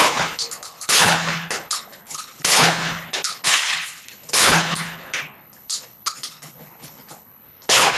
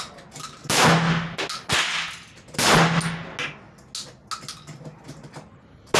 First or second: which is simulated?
first